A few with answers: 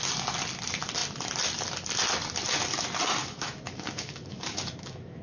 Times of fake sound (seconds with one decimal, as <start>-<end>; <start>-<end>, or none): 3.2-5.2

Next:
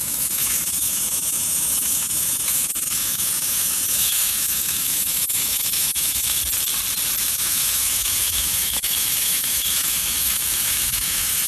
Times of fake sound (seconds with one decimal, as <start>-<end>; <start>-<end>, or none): 0.0-6.4; 7.2-11.5

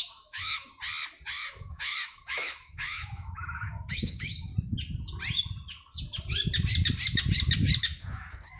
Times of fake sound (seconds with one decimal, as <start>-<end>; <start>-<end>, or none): 0.0-0.7; 1.3-4.5; 7.8-8.6

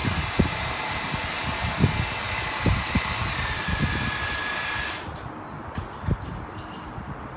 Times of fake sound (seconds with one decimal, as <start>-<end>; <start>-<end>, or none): none